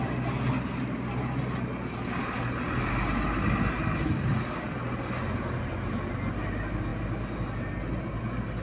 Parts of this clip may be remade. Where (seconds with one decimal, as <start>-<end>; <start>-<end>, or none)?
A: none